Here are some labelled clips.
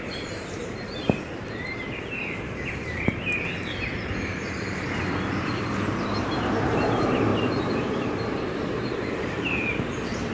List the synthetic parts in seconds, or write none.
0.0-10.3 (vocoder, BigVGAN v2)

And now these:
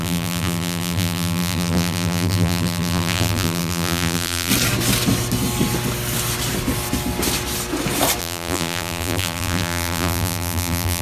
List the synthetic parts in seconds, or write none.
0.0-4.5 (vocoder, BigVGAN v2); 8.2-11.0

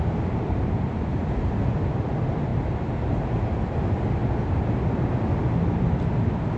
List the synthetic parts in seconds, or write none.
0.0-1.1 (vocoder, BigVGAN v2); 1.6-2.5; 3.8-4.2; 6.0-6.6

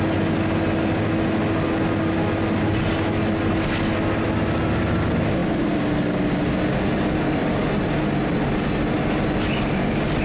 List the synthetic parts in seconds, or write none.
none

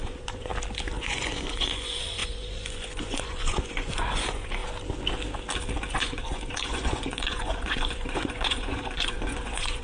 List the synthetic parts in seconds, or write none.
0.0-0.5 (vocoder, Vocos); 1.0-4.6; 5.9-9.8

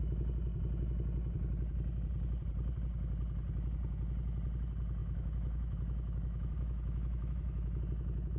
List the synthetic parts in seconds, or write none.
5.0-7.8 (autoencoder, DAC-VAE)